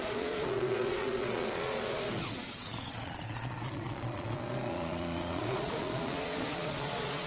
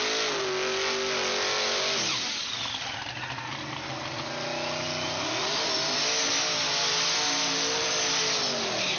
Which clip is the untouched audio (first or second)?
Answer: second